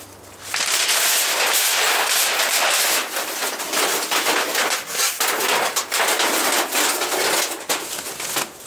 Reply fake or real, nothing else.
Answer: real